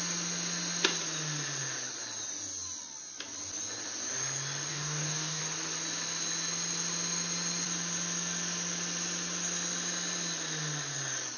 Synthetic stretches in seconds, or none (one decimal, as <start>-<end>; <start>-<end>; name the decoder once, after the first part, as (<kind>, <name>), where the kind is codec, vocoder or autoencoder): 4.7-5.4 (codec, DAC)